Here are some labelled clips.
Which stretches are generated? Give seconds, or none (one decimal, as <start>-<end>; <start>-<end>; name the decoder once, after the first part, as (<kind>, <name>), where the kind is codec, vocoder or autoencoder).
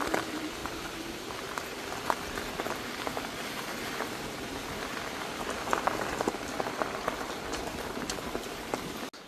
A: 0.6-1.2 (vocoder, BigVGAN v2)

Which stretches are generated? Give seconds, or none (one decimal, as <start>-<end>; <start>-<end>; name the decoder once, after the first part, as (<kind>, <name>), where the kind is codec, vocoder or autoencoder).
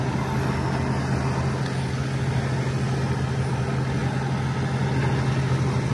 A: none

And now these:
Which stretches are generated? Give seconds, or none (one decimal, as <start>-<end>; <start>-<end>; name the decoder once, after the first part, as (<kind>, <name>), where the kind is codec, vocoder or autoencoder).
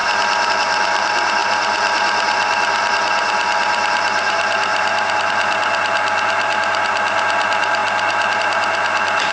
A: 0.5-4.7 (vocoder, BigVGAN v2); 5.3-9.3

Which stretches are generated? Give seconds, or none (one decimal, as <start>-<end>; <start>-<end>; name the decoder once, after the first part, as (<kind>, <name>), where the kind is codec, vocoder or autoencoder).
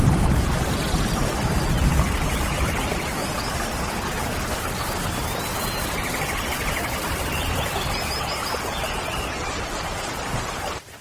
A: 3.2-4.5 (vocoder, BigVGAN v2)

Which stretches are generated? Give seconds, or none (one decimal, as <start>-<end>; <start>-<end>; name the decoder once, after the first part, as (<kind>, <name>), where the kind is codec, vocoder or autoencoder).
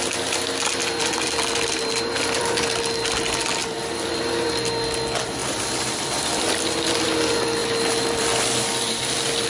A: 0.8-2.8 (vocoder, BigVGAN v2); 3.6-4.2; 5.4-7.1; 7.6-8.4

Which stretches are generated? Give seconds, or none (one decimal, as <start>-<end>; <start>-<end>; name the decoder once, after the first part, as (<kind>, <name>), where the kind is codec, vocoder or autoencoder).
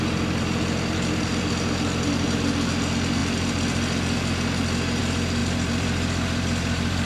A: 5.4-7.1 (vocoder, BigVGAN v2)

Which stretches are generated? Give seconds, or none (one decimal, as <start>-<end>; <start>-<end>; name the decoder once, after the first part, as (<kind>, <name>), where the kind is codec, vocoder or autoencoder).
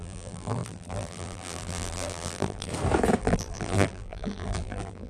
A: 0.0-2.7 (vocoder, BigVGAN v2); 3.2-5.1